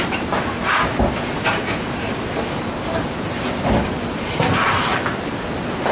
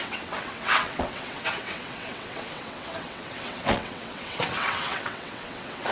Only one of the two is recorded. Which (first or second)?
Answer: first